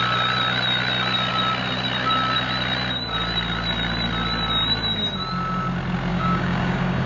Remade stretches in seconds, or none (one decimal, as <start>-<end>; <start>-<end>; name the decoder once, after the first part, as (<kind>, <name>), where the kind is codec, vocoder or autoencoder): 6.1-7.1 (codec, DAC)